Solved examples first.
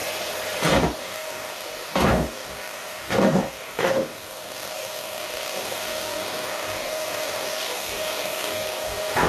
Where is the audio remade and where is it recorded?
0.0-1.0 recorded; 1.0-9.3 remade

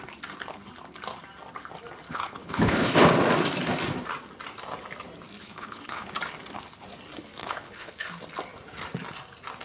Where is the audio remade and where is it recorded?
0.0-2.1 recorded; 2.1-2.9 remade; 2.9-5.4 recorded; 5.4-6.1 remade; 6.1-7.4 recorded; 7.4-7.9 remade; 7.9-9.6 recorded

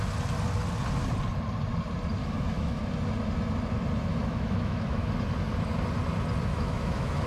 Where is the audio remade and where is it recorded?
0.0-2.2 recorded; 2.2-2.8 remade; 2.8-4.1 recorded; 4.1-5.1 remade; 5.1-6.5 recorded; 6.5-7.3 remade

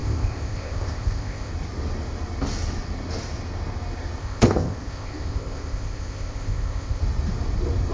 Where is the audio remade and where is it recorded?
0.0-1.5 remade; 1.5-4.2 recorded; 4.2-7.0 remade; 7.0-7.9 recorded

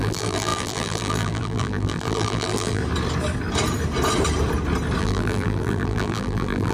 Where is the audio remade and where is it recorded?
0.0-2.8 remade; 2.8-5.0 recorded; 5.0-6.7 remade